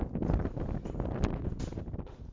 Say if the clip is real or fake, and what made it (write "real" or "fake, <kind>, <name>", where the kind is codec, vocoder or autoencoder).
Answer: real